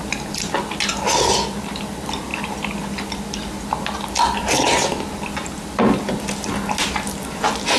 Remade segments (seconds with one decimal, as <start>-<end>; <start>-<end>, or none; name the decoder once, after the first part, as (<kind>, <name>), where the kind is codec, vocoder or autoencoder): none